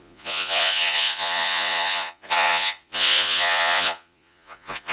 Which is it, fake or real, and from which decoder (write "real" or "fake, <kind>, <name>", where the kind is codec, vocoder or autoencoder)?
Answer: fake, vocoder, Vocos